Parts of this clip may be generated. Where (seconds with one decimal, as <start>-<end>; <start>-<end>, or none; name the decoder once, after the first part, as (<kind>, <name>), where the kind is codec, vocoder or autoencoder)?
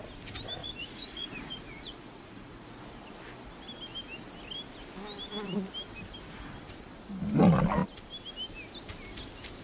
0.6-2.9 (vocoder, Vocos)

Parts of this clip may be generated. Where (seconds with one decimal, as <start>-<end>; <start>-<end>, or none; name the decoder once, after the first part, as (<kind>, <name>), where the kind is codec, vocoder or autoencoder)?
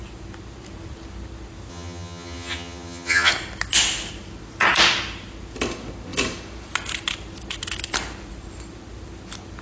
1.7-3.3 (vocoder, HiFi-GAN)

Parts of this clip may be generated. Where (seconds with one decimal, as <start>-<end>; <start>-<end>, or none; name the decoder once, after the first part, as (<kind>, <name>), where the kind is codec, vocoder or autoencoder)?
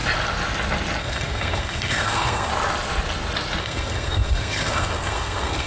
1.0-2.5 (codec, SNAC); 3.6-5.7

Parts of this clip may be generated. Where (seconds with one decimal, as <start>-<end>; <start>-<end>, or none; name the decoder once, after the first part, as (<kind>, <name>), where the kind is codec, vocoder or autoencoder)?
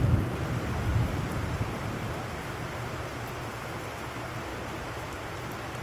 0.9-3.0 (vocoder, BigVGAN v2); 4.5-5.3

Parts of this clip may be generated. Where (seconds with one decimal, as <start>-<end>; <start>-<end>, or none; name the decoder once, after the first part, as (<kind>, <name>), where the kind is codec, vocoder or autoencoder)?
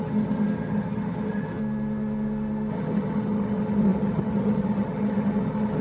0.0-1.6 (vocoder, HiFi-GAN); 2.7-5.8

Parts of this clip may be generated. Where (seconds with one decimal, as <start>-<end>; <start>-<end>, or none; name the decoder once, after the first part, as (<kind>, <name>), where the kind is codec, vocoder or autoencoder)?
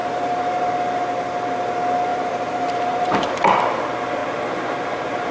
0.0-0.7 (vocoder, BigVGAN v2); 2.1-3.6; 4.2-5.3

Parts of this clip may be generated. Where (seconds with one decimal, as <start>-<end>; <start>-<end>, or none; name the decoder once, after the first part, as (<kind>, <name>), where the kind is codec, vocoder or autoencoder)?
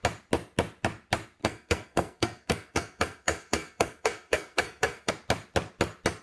1.4-5.1 (codec, SNAC)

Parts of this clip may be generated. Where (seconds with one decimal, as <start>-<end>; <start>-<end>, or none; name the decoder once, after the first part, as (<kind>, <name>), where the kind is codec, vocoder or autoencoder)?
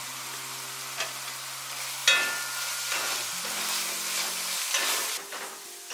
none